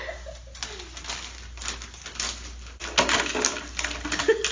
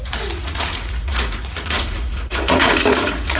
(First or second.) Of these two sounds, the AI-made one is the second